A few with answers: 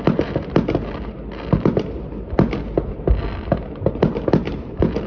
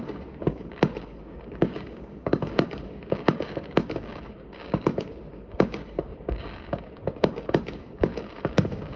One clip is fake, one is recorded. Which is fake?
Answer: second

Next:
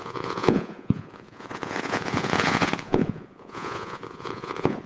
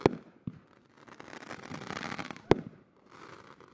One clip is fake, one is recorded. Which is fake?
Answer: first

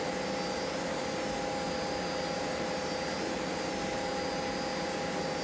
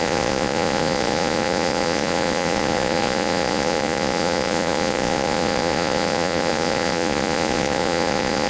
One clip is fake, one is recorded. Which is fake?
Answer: second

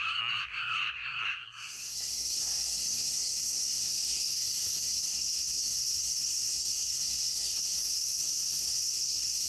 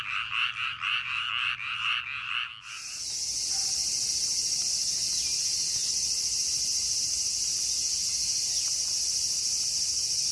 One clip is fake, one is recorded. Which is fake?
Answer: first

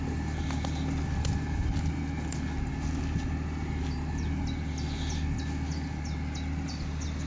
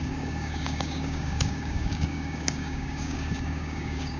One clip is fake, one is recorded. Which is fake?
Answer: second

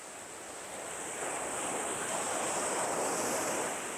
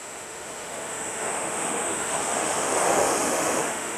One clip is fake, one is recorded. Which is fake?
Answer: second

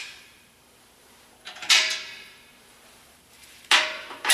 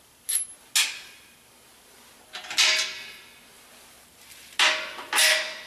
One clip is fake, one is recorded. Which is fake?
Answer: first